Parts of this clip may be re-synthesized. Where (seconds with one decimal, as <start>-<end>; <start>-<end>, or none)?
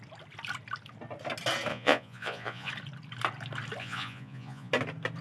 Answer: 1.7-2.7; 3.8-4.7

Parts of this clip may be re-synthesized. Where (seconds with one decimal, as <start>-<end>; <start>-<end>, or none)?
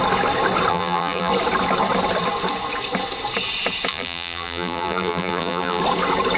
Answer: 0.7-1.3; 3.9-5.8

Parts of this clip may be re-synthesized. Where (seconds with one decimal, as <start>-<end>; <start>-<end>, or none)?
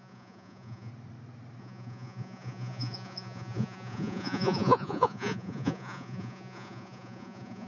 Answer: 0.0-0.9; 1.6-7.7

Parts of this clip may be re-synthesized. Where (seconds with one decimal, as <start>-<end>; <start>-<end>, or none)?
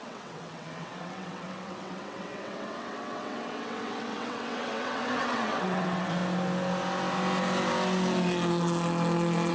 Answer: 0.0-6.2